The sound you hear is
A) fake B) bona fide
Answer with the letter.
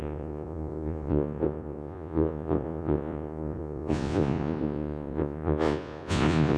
A